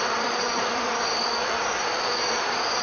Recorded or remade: remade